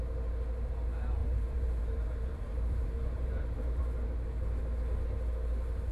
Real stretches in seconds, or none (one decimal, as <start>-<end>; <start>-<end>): 0.0-1.2; 3.8-5.9